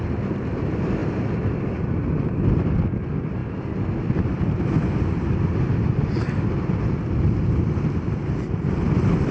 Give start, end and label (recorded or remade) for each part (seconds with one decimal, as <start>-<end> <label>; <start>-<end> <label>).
0.0-9.3 recorded